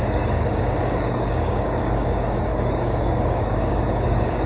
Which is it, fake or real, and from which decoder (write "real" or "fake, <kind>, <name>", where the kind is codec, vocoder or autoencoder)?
fake, codec, DAC